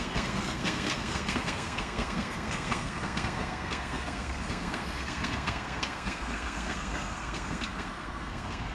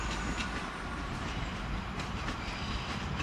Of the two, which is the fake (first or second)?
first